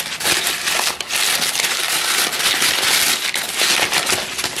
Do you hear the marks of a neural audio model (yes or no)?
no